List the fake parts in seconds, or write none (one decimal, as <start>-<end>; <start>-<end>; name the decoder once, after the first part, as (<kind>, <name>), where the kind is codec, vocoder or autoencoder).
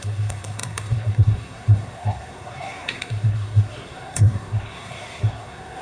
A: 0.0-5.8 (codec, SNAC)